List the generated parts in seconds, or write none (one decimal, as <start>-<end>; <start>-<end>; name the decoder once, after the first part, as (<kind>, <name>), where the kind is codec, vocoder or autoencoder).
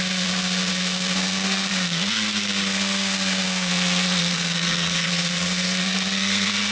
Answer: 0.0-3.7 (codec, SNAC); 4.3-6.7